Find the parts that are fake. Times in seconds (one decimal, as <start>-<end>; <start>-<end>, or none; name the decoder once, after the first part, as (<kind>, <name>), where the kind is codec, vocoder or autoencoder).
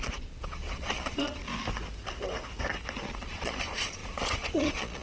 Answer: 0.0-1.4 (vocoder, Vocos); 3.0-5.0